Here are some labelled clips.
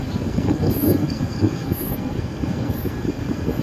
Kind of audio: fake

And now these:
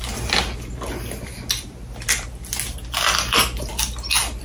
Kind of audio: real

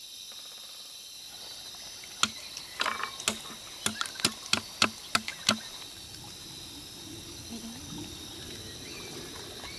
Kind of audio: real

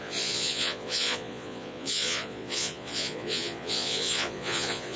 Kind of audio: fake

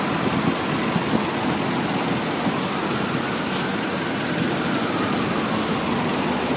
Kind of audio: real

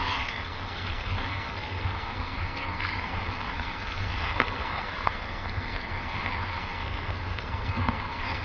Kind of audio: fake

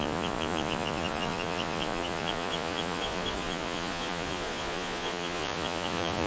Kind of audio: fake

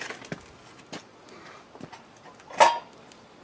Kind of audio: real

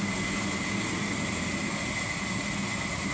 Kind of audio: real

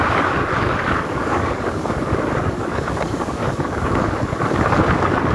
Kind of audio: fake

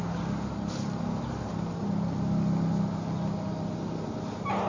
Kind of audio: real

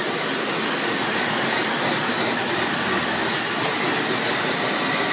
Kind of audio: real